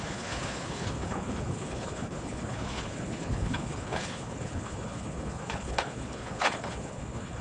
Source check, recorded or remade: remade